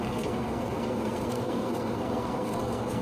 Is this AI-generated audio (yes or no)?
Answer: yes